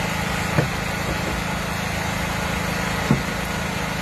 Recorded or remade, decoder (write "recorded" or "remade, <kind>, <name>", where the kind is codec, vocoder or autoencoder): recorded